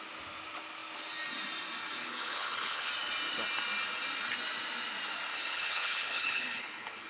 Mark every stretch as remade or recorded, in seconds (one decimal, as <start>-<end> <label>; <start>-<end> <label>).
0.0-2.0 recorded; 2.0-2.9 remade; 2.9-5.3 recorded; 5.3-7.1 remade